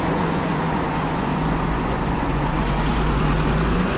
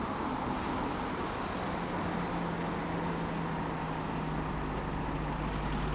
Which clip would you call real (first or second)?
second